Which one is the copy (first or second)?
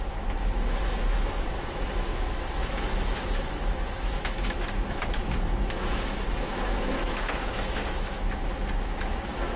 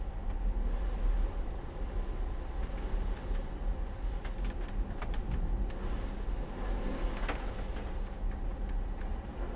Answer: first